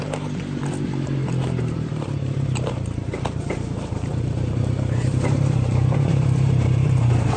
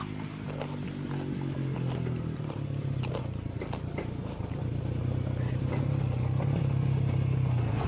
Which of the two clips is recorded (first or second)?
second